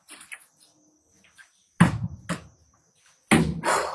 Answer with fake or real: real